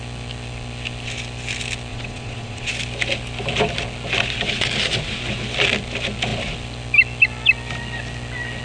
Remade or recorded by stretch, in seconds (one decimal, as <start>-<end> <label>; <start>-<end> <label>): 0.0-1.9 recorded; 1.9-2.7 remade; 2.7-8.6 recorded